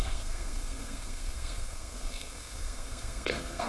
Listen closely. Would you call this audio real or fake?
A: fake